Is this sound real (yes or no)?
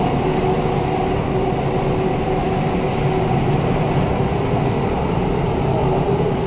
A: yes